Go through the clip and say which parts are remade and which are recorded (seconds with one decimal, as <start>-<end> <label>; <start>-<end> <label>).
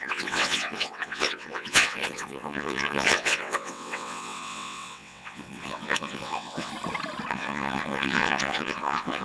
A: 0.0-6.7 remade; 6.7-7.3 recorded; 7.3-9.2 remade